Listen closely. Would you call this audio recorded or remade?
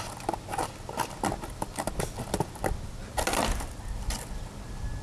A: recorded